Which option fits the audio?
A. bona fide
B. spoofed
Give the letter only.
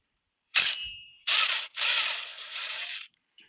B